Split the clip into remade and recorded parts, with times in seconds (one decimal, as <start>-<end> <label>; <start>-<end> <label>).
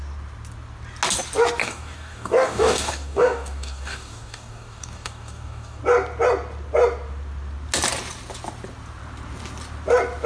0.0-1.6 recorded; 1.6-5.8 remade; 5.8-10.3 recorded